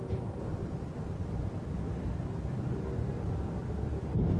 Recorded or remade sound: recorded